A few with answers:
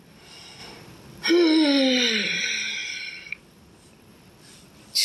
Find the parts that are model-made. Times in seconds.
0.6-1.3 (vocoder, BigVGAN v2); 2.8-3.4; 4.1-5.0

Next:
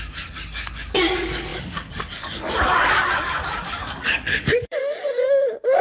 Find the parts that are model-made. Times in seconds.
0.0-5.8 (codec, DAC)

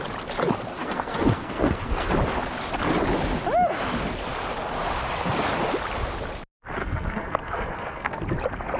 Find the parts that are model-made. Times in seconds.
0.7-2.1 (codec, SNAC); 6.8-8.2